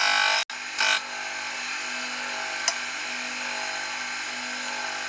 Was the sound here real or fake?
real